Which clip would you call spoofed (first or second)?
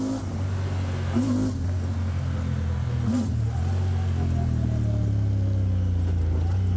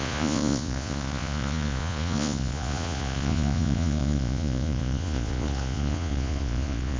second